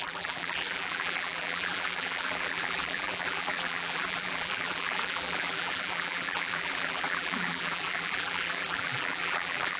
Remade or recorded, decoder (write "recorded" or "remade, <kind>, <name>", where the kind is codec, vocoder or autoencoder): remade, vocoder, BigVGAN v2